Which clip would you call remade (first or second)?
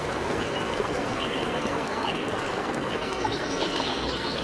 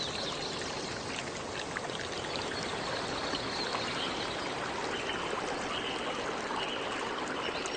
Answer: first